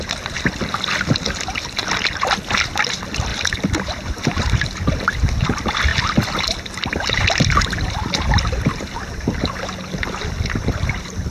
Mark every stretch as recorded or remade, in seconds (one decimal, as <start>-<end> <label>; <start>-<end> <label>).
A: 0.0-3.3 recorded; 3.3-4.4 remade; 4.4-5.9 recorded; 5.9-7.2 remade; 7.2-11.3 recorded